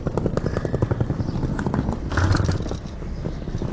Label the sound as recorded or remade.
recorded